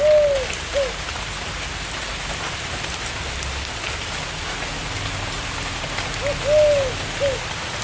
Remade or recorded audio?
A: recorded